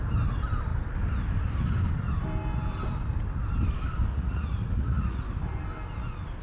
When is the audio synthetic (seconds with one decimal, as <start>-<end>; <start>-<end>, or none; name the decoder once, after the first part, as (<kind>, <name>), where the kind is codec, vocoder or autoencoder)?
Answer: 4.1-5.2 (vocoder, Vocos)

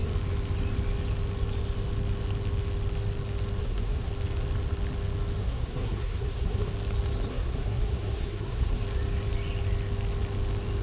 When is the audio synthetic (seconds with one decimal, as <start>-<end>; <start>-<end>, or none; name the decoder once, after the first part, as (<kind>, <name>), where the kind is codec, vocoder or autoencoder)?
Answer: 3.6-4.1 (codec, SNAC); 5.4-6.7; 7.3-8.8